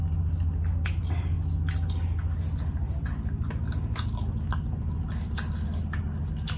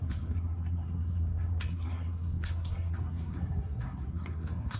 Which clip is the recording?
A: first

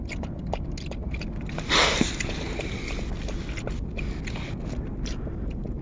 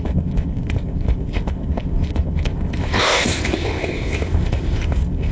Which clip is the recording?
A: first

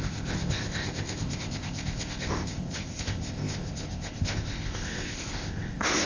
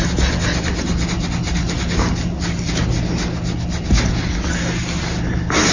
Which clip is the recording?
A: second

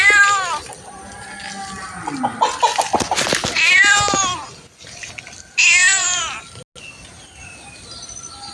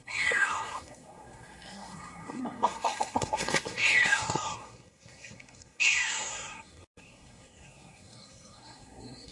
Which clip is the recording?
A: first